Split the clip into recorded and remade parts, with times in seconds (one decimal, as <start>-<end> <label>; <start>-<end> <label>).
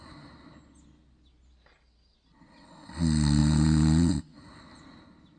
0.0-3.4 recorded; 3.4-4.2 remade; 4.2-5.4 recorded